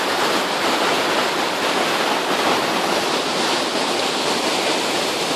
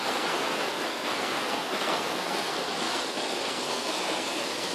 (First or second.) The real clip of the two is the first